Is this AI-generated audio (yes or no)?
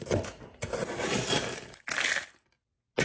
no